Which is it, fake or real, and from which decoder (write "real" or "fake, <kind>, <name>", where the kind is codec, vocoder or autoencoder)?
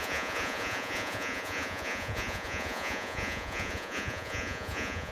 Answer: fake, vocoder, Vocos